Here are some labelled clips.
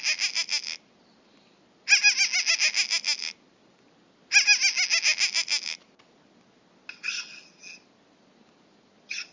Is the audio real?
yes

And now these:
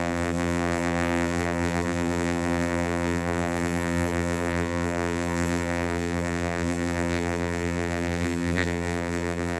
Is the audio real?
no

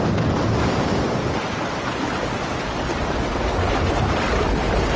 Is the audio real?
yes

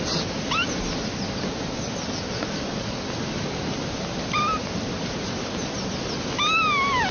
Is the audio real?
yes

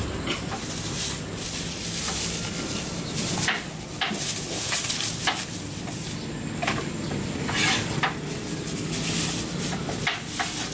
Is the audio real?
yes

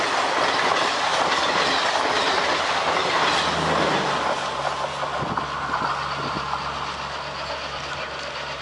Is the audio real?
yes